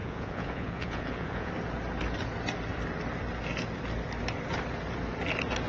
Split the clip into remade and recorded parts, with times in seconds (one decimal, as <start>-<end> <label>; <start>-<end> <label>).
0.0-1.5 remade; 1.5-5.7 recorded